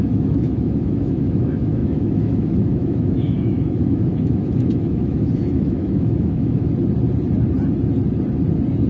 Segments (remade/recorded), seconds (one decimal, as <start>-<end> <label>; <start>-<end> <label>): 0.0-6.7 remade; 6.7-8.9 recorded